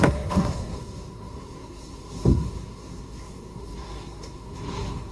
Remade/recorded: remade